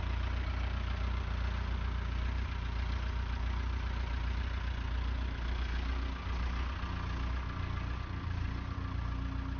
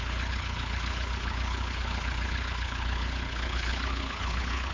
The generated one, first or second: second